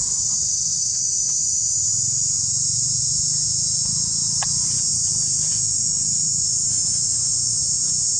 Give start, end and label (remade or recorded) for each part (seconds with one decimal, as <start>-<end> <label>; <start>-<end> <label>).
0.0-0.8 recorded; 0.8-1.8 remade; 1.8-5.5 recorded; 5.5-7.6 remade; 7.6-8.2 recorded